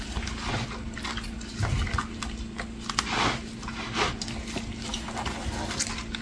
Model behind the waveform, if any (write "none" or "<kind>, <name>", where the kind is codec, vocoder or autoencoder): none